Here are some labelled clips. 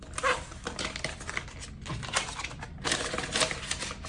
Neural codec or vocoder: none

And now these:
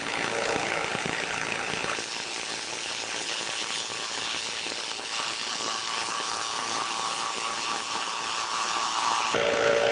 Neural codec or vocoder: codec, HILCodec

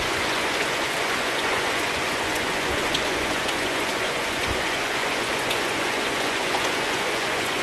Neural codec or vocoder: vocoder, Vocos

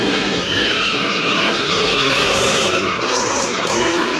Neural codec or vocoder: codec, SNAC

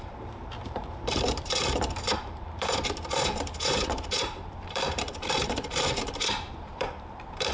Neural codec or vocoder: vocoder, BigVGAN v2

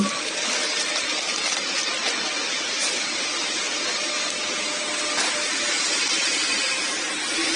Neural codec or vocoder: none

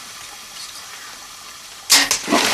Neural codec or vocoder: none